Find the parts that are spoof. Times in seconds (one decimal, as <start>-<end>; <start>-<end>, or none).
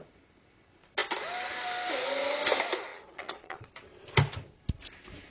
2.9-3.7